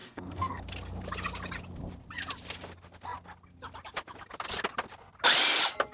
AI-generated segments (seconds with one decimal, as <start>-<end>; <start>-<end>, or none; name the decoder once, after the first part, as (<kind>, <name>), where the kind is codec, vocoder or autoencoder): 0.0-0.6 (codec, SNAC)